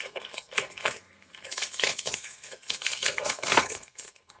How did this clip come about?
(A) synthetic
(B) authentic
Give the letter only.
A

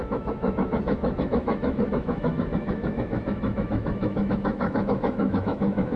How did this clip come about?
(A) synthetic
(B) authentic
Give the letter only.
A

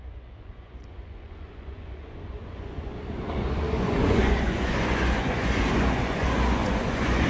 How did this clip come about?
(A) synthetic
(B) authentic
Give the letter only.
A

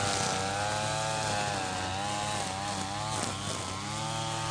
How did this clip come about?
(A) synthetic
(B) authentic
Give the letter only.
B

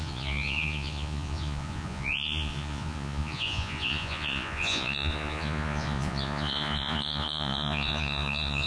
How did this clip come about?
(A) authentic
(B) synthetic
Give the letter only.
B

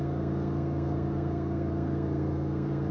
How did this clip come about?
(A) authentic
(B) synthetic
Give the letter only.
B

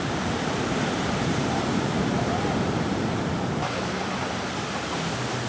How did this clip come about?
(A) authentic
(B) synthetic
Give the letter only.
B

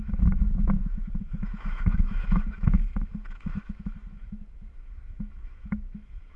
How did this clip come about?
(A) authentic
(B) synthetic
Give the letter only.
B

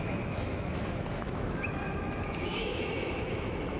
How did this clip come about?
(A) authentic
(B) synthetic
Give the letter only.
B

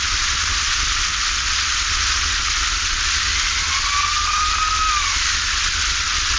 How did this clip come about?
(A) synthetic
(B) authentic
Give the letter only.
B